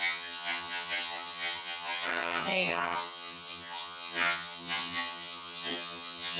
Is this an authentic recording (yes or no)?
no